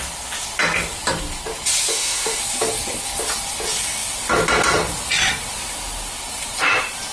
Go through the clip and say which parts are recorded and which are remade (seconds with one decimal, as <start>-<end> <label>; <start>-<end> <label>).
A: 0.0-1.9 recorded; 1.9-2.4 remade; 2.4-7.1 recorded